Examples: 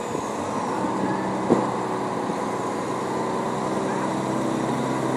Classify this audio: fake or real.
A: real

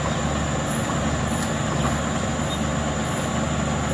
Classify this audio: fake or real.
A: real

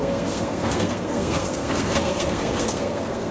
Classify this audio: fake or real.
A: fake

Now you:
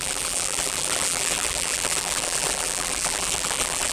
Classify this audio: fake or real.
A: fake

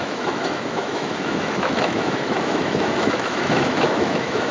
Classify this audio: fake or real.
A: fake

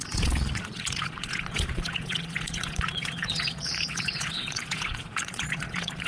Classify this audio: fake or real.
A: fake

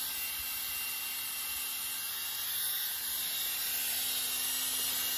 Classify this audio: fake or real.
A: real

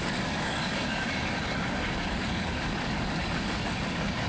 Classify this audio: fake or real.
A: fake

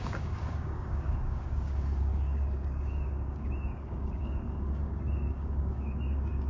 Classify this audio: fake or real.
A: fake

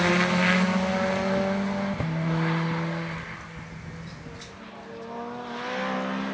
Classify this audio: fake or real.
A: real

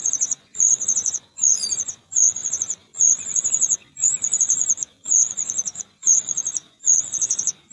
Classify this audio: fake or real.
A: fake